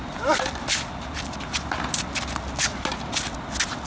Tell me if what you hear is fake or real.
real